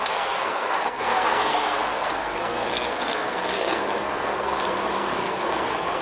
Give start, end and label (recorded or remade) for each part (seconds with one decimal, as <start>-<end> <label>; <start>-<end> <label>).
0.0-6.0 remade